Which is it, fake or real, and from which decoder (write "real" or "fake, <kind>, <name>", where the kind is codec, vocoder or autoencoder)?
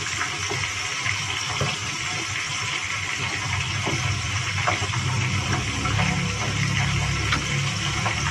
real